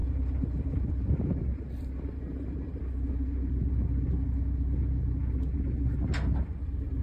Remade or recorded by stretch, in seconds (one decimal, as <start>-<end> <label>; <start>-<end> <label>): 0.0-2.8 remade; 2.8-7.0 recorded